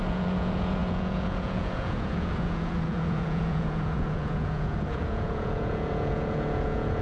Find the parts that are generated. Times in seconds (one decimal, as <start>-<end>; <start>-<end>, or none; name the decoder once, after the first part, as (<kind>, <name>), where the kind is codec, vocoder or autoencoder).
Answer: 0.0-7.0 (vocoder, Vocos)